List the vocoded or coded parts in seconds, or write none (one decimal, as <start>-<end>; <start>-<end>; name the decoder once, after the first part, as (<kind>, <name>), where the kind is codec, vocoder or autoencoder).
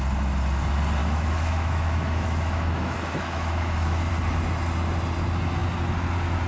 1.0-4.1 (autoencoder, DAC-VAE)